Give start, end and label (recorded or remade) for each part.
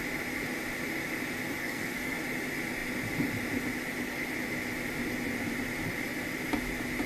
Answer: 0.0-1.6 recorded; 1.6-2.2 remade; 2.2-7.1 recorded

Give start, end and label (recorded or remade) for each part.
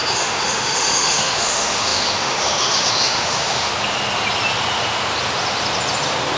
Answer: 0.0-3.7 remade; 3.7-6.4 recorded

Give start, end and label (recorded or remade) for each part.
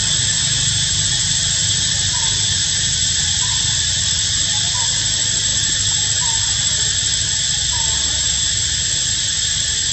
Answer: 0.0-9.9 recorded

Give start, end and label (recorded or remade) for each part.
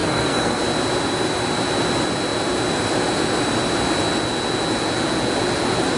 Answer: 0.0-0.6 remade; 0.6-6.0 recorded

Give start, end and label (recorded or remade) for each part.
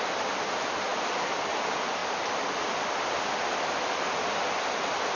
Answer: 0.0-5.2 recorded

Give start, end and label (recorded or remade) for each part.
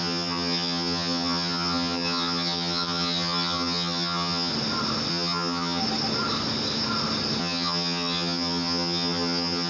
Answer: 0.0-4.5 remade; 4.5-5.1 recorded; 5.1-5.8 remade; 5.8-7.4 recorded; 7.4-9.7 remade